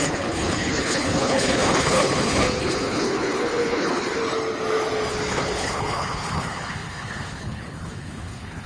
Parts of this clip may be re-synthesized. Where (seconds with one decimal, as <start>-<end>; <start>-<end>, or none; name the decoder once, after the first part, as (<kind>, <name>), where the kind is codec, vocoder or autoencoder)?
0.0-4.2 (codec, HILCodec); 5.1-8.7